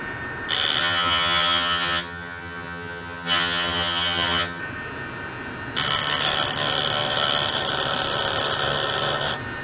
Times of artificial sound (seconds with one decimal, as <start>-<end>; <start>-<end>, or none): 0.8-4.6